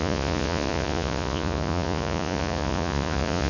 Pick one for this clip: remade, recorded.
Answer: remade